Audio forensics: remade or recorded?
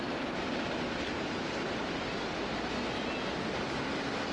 recorded